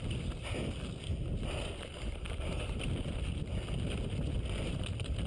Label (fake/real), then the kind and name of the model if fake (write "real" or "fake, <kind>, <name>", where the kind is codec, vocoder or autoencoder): real